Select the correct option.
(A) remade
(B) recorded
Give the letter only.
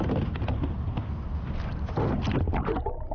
B